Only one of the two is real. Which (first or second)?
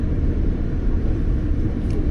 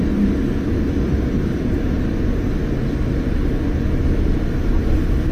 second